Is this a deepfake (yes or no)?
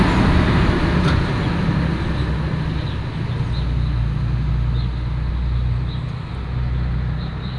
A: no